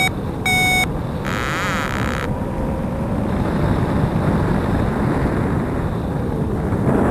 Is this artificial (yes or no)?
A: no